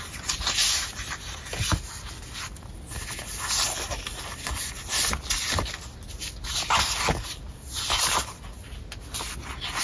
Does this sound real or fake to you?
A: real